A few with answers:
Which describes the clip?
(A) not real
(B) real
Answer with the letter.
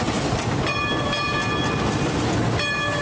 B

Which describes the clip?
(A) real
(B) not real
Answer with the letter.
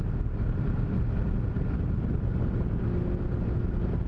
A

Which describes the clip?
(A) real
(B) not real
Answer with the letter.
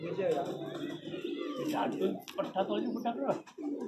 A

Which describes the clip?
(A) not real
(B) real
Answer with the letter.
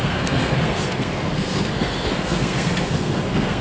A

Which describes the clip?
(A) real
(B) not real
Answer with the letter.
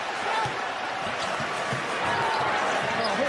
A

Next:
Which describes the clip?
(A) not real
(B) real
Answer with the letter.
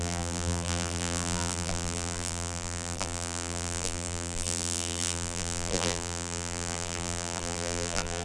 A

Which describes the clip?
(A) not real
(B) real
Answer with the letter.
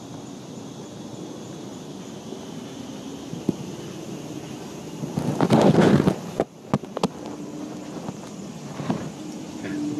B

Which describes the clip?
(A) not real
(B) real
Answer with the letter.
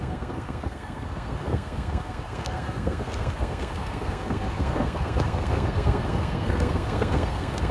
A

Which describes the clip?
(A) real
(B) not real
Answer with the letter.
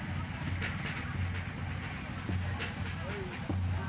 A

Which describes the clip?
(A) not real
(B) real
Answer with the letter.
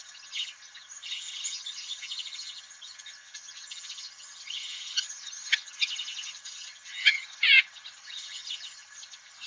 A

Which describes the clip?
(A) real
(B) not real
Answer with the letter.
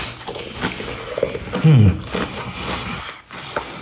A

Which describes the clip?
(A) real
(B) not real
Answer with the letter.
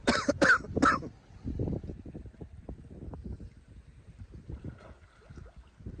A